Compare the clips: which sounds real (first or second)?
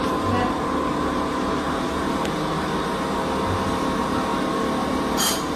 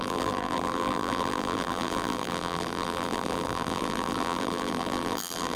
first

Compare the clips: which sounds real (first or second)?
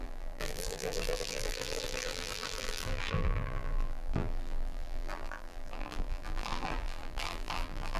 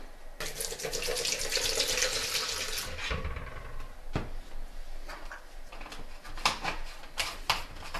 second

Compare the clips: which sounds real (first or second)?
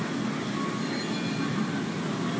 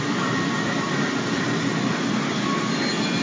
first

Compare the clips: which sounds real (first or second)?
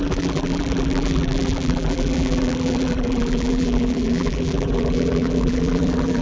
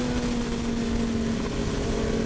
second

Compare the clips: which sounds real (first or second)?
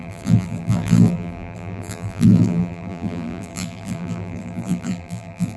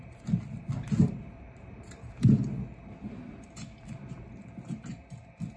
second